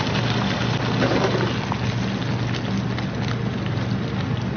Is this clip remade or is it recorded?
recorded